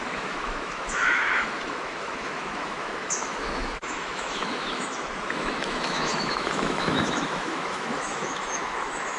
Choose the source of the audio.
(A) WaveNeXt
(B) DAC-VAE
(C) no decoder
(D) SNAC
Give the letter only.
B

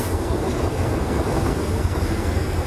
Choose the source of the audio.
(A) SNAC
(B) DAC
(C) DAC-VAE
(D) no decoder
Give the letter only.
A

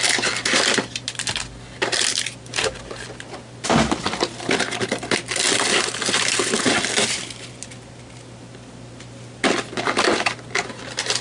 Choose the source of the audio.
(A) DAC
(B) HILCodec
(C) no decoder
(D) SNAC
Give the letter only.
C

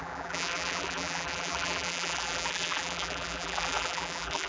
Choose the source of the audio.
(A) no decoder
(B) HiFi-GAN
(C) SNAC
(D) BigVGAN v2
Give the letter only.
D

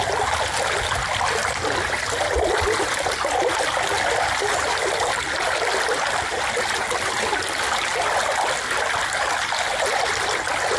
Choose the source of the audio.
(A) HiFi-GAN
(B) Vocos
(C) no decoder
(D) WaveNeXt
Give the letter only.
C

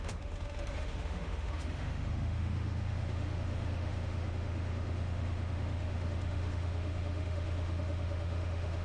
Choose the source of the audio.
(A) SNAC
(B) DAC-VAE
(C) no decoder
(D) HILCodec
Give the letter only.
B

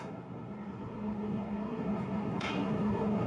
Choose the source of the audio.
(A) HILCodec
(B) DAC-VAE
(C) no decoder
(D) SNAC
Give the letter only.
D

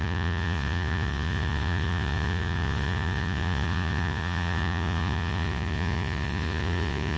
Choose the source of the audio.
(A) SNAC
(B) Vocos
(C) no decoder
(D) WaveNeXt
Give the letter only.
B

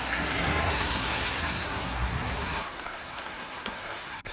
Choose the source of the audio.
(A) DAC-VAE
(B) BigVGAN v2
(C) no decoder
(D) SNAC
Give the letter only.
D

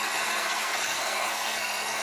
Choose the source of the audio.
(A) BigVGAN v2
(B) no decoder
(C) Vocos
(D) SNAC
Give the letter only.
D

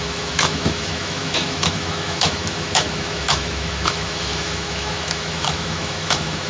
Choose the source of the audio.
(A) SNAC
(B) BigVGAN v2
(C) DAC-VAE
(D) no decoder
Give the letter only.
C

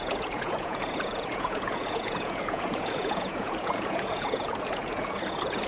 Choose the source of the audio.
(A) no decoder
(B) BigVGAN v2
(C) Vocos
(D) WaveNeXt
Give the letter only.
C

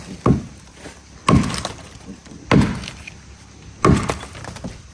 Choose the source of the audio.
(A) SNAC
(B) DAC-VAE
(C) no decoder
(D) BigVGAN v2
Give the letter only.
C